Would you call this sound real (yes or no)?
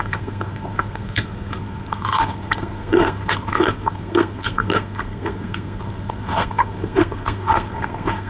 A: no